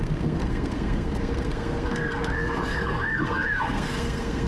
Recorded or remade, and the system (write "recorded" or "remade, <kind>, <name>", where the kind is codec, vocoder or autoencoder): remade, codec, SNAC